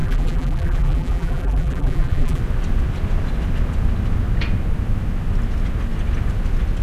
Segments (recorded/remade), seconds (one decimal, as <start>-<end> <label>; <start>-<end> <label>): 0.0-2.4 remade; 2.4-6.8 recorded